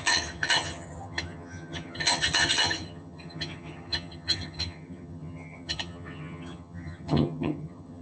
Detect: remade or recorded remade